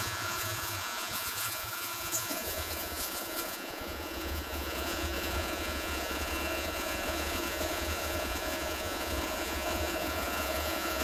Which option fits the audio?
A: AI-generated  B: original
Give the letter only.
A